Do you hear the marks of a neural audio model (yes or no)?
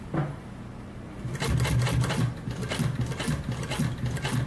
no